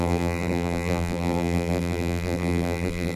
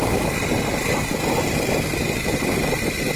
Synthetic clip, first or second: first